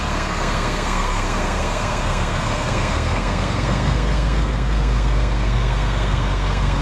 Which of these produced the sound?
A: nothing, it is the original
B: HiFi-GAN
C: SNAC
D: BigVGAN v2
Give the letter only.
C